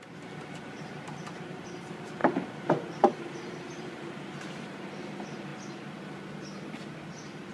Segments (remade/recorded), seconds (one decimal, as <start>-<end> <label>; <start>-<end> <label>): 0.0-7.5 recorded